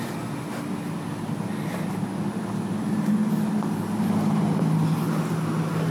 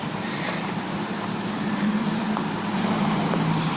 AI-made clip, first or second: second